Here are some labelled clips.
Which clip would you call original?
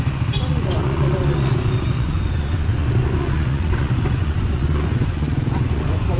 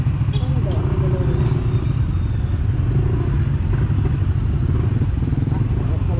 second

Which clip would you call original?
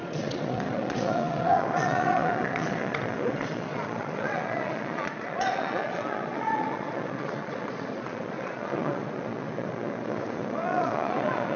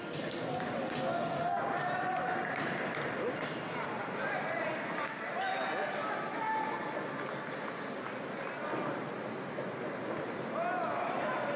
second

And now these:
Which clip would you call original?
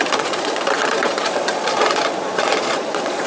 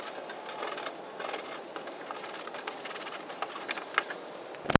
second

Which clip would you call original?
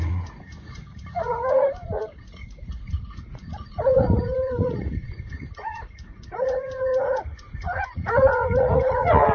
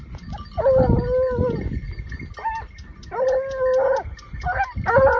second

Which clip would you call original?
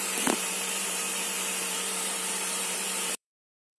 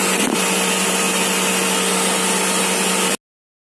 second